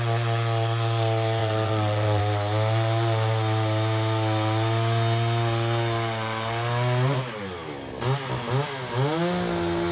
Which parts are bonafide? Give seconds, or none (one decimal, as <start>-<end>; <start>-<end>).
0.0-1.4; 2.2-9.9